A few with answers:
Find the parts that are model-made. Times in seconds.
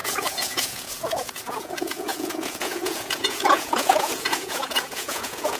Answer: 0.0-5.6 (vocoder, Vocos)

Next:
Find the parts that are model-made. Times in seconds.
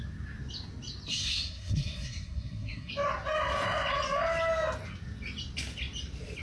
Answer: 1.1-2.9 (codec, SNAC)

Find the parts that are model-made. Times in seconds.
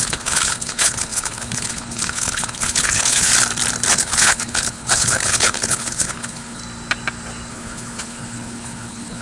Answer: 0.0-3.3 (codec, HILCodec); 3.9-6.6; 7.5-9.2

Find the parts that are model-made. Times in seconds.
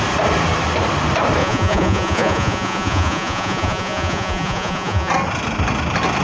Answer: 1.4-5.1 (vocoder, Vocos)